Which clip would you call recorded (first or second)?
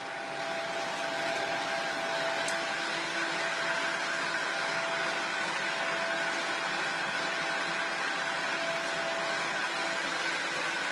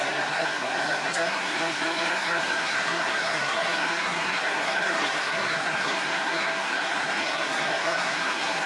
first